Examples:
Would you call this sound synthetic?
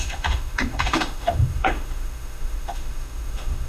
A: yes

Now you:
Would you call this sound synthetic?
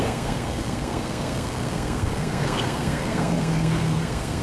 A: yes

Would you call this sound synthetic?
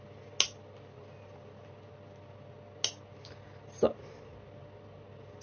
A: no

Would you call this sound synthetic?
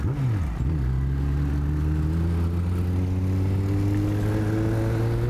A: no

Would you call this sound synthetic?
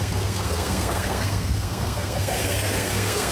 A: yes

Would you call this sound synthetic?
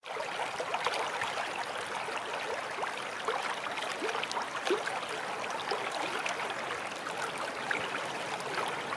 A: no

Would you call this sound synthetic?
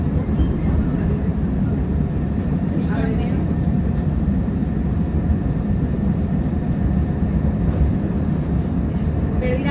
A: yes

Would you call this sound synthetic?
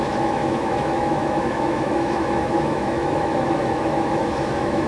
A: yes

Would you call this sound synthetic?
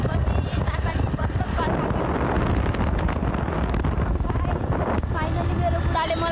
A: no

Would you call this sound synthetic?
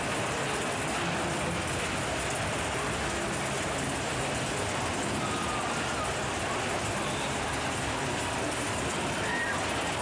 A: no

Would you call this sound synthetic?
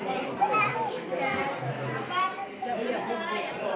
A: no